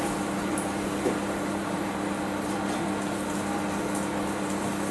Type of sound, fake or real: real